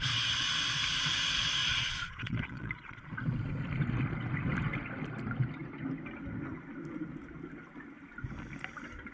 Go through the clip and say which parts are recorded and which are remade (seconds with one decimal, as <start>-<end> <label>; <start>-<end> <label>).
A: 0.0-1.6 recorded; 1.6-3.1 remade; 3.1-9.1 recorded